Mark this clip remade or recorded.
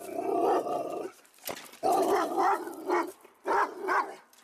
remade